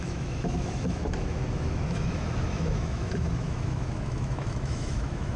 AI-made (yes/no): yes